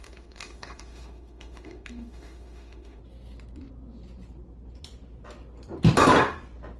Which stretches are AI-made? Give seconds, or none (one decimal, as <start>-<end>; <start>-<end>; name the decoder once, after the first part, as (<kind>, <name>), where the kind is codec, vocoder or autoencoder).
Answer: 0.0-3.0 (autoencoder, DAC-VAE)

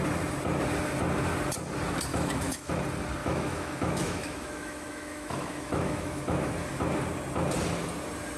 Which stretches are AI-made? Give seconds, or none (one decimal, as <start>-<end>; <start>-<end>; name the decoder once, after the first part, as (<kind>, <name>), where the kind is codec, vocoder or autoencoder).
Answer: 2.1-2.7 (autoencoder, DAC-VAE); 3.2-6.5

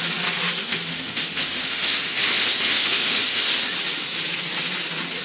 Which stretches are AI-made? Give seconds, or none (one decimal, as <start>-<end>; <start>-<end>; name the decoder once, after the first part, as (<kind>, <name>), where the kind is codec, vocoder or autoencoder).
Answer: 0.4-3.5 (autoencoder, DAC-VAE)

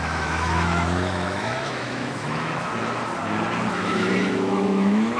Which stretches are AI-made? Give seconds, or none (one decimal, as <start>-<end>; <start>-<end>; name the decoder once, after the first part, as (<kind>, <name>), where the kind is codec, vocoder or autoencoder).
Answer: 0.0-2.7 (autoencoder, DAC-VAE); 3.7-5.2

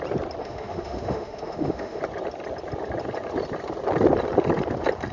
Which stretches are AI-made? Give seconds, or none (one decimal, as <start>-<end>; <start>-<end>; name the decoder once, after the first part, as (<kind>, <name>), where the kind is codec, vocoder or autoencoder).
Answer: 0.4-2.0 (autoencoder, DAC-VAE)